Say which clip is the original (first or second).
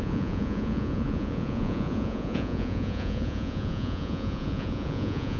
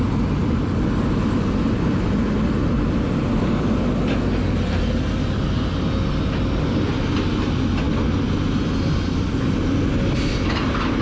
second